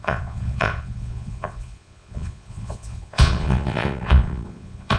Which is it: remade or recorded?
remade